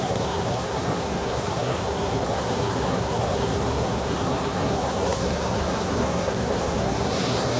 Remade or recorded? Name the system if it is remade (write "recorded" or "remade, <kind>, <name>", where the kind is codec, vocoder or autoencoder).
remade, codec, SNAC